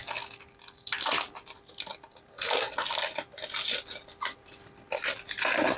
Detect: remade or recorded recorded